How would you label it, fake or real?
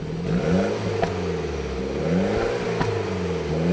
real